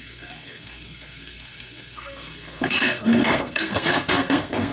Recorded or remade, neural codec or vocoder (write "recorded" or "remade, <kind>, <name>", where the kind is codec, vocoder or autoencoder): remade, codec, SNAC